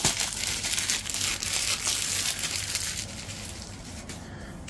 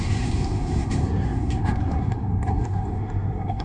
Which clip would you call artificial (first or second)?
second